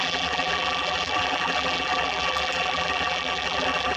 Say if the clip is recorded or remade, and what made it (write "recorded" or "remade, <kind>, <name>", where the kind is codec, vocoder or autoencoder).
remade, vocoder, BigVGAN v2